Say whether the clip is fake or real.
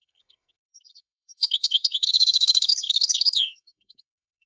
fake